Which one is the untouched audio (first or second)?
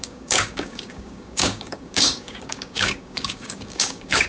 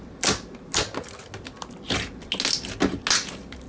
second